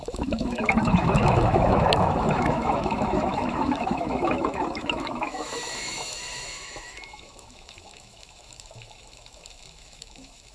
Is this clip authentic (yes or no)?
no